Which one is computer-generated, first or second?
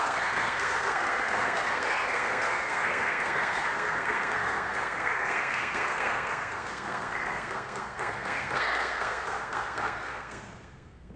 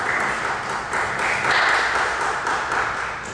first